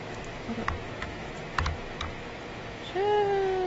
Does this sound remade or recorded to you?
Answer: remade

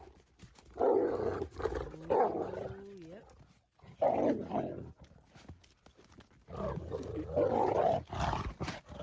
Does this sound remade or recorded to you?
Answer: recorded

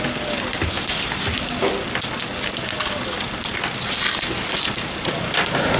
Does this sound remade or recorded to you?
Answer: recorded